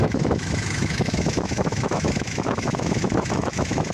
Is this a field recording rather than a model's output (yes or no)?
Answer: no